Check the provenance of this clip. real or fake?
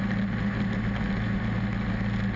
real